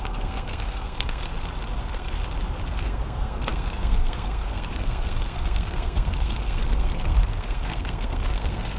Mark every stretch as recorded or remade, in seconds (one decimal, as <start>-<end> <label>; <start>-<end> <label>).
0.0-1.2 remade; 1.2-1.8 recorded; 1.8-2.2 remade; 2.2-2.8 recorded; 2.8-8.8 remade